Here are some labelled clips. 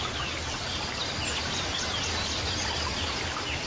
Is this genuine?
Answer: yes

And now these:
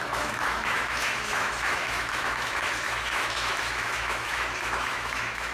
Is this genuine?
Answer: no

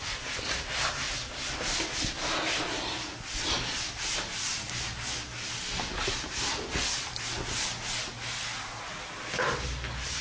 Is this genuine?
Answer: yes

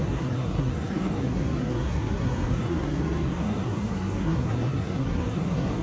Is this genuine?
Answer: no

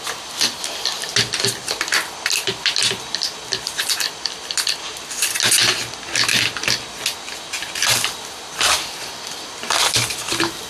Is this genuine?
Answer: yes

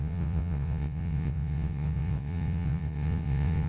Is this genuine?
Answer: no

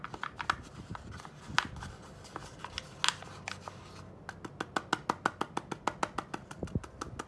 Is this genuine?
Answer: yes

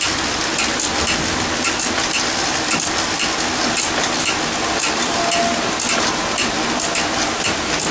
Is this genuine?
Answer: yes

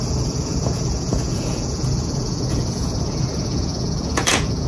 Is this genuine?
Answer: no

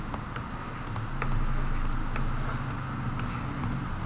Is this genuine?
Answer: yes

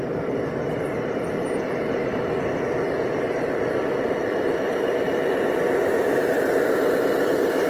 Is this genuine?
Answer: yes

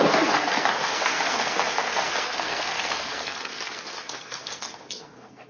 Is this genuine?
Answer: no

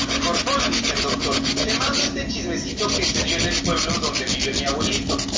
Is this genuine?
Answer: yes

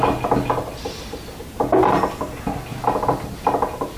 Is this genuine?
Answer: yes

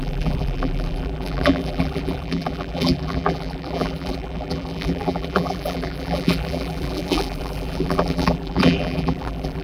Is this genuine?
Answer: no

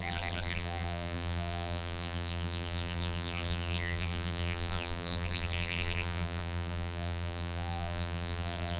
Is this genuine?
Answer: no